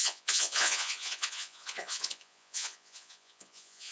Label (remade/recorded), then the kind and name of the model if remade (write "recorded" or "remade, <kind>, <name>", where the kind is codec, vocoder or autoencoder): remade, vocoder, Vocos